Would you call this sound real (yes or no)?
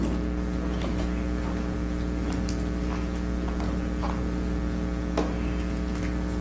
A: yes